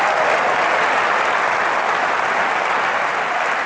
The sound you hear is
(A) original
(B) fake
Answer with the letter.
A